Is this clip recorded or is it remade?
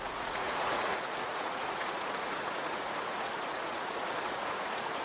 remade